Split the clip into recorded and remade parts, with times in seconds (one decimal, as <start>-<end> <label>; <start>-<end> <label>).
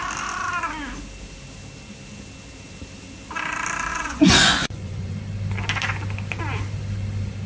0.0-3.9 recorded; 3.9-5.1 remade; 5.1-7.5 recorded